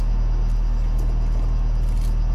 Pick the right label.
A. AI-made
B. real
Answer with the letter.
B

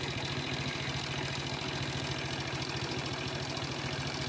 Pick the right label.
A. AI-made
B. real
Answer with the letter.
B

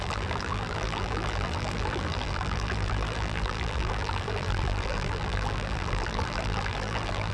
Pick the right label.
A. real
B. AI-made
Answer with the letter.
B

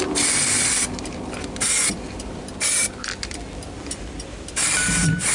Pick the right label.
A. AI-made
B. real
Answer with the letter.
A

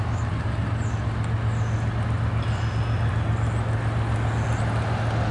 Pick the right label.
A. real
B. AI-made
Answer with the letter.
A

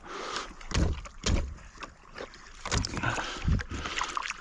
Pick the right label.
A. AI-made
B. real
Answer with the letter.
B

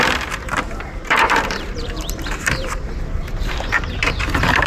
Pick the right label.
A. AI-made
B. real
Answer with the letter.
A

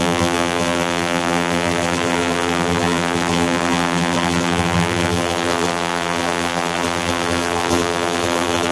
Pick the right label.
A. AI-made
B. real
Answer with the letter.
A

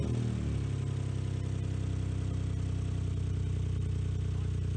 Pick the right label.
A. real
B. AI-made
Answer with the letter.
A